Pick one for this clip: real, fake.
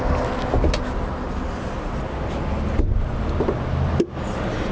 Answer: real